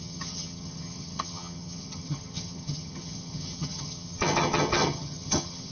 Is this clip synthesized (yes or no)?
yes